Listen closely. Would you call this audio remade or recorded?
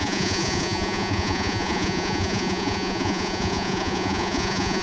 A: remade